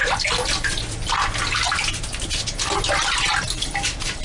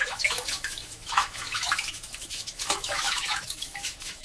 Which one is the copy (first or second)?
second